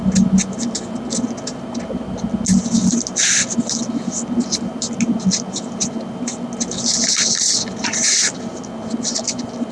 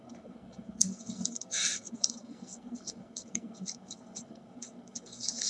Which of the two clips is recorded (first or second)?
first